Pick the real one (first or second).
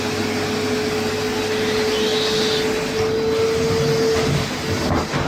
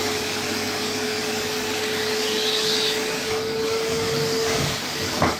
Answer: first